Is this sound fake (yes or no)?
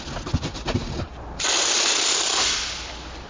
no